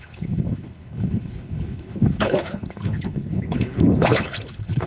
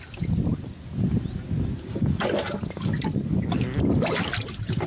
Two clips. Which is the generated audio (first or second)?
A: first